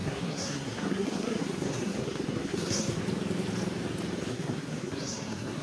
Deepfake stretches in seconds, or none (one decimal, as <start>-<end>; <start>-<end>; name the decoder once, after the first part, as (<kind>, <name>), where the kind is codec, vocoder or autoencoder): 0.0-3.0 (codec, SNAC); 4.3-5.6